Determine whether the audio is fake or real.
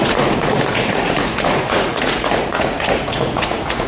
fake